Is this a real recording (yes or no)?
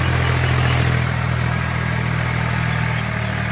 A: yes